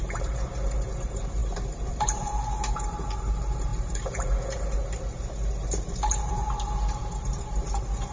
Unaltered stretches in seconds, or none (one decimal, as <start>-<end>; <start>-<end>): none

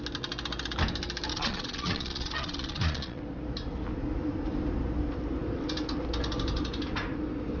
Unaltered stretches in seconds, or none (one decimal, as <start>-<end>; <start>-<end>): 0.0-1.3; 3.2-7.6

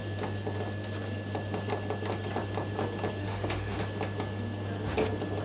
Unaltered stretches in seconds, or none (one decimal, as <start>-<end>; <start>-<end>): 0.0-3.2; 3.8-5.4

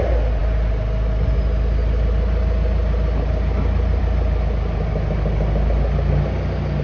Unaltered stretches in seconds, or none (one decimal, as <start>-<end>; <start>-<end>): 0.0-6.8

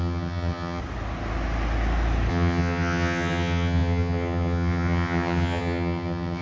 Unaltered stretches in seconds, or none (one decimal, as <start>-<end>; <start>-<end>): 0.8-2.3

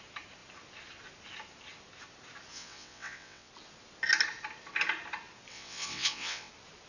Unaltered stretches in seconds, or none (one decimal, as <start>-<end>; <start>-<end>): 0.0-2.5; 3.5-5.5; 6.5-6.9

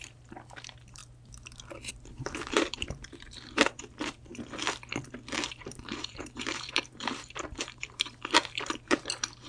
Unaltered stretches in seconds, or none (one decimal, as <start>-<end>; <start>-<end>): 1.0-1.9; 4.3-5.5

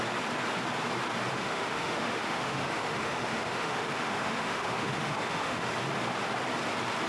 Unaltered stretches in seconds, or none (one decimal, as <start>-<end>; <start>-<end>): 0.0-1.4; 5.7-7.1